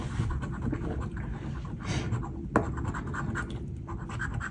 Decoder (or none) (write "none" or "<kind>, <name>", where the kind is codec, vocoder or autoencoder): none